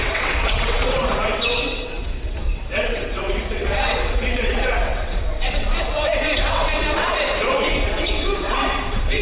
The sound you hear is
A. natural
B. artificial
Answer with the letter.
B